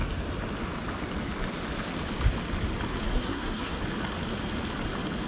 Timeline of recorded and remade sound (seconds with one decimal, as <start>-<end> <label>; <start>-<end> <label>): 0.0-3.1 recorded; 3.1-3.8 remade; 3.8-5.3 recorded